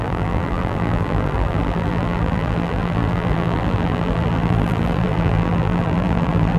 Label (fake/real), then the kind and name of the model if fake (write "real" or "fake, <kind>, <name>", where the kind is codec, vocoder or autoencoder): fake, vocoder, BigVGAN v2